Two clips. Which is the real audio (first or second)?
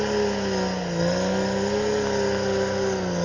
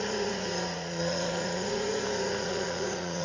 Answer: first